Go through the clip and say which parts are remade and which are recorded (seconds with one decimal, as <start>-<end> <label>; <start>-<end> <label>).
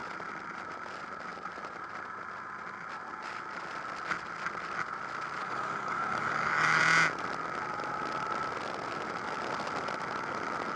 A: 0.0-5.4 recorded; 5.4-6.8 remade; 6.8-10.8 recorded